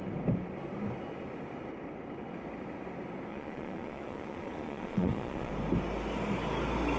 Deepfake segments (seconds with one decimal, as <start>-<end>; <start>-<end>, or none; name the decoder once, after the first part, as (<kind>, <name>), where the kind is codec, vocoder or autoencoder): 3.3-5.5 (vocoder, Vocos)